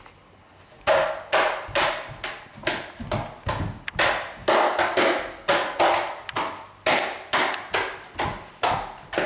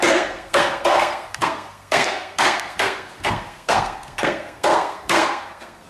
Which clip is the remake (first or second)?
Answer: second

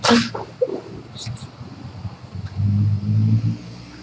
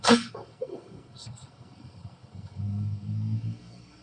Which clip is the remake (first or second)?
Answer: second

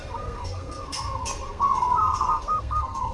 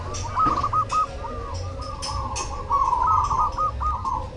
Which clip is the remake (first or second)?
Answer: first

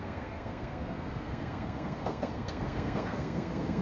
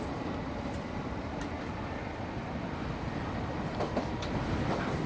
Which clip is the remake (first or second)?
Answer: first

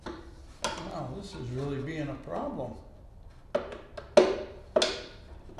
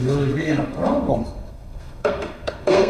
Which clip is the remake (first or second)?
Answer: second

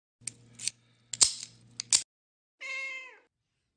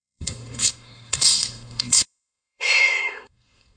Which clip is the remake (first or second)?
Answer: second